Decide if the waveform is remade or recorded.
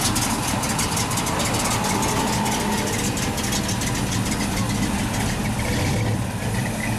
recorded